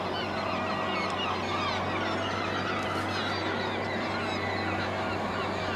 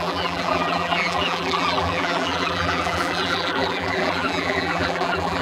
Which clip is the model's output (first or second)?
second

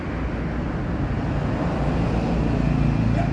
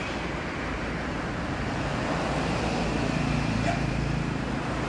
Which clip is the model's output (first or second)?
second